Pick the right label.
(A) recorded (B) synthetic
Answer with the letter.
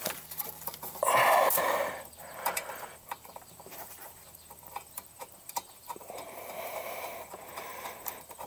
B